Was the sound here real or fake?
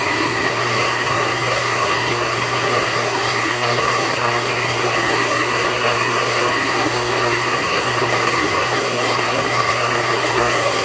fake